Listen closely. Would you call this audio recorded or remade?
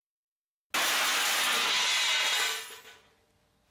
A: recorded